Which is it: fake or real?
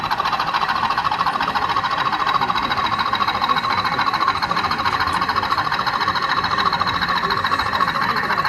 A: real